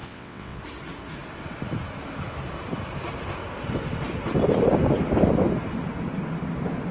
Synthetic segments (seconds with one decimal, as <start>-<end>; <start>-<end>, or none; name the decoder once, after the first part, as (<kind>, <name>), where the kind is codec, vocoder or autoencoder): 0.0-0.6 (vocoder, WaveNeXt)